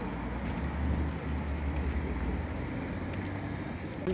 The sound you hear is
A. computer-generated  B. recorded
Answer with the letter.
B